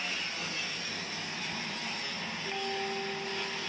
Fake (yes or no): no